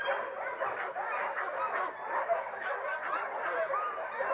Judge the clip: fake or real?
real